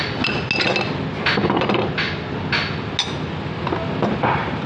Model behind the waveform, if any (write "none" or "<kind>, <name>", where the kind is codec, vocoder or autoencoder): none